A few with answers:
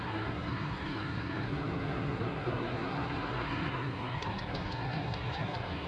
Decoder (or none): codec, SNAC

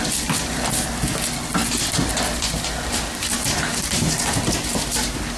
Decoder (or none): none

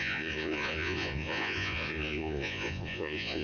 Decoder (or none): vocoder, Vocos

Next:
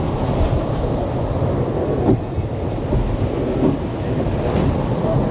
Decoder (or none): none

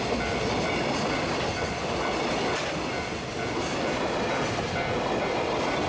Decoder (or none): none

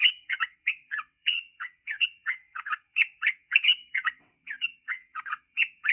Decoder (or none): vocoder, WaveNeXt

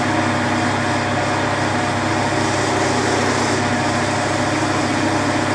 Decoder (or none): none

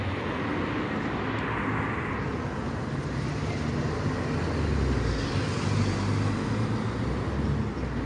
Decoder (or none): none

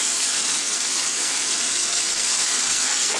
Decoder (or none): codec, SNAC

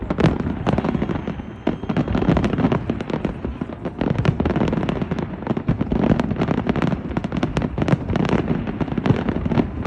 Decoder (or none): none